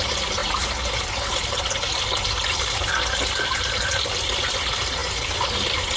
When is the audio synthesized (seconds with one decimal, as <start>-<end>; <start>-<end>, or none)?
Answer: none